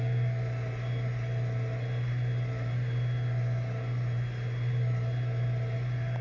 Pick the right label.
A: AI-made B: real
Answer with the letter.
B